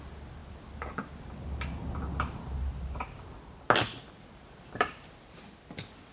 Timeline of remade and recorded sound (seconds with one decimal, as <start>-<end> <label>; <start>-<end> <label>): 0.0-6.1 recorded